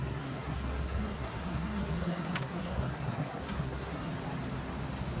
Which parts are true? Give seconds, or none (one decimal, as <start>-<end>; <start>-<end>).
4.1-5.2